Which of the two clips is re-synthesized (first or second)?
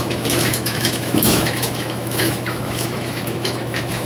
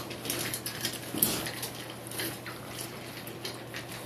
first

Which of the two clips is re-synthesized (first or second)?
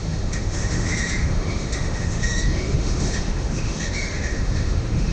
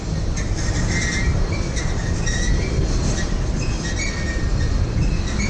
first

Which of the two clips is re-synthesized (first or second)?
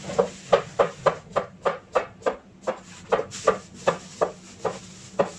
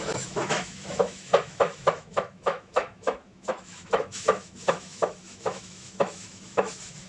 second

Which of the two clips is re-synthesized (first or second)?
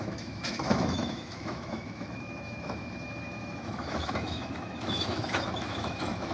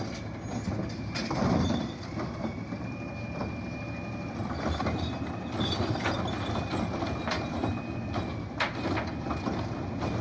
first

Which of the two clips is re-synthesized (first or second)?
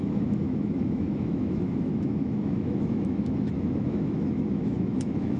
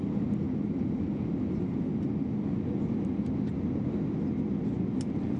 first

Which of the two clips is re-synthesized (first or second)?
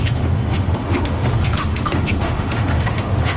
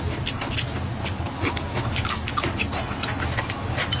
first